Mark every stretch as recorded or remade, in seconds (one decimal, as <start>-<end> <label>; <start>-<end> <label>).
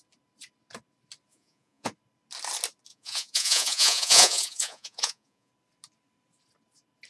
0.0-1.3 recorded; 1.3-1.9 remade; 1.9-2.9 recorded; 2.9-5.5 remade; 5.5-7.1 recorded